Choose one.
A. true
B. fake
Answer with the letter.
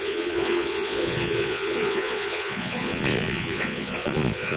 B